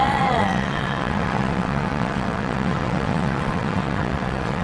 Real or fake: fake